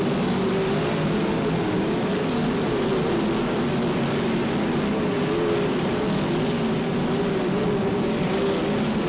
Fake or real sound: real